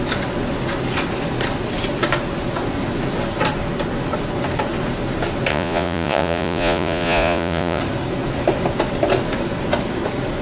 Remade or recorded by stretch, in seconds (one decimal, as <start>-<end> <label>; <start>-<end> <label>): 0.0-5.5 recorded; 5.5-7.8 remade; 7.8-10.4 recorded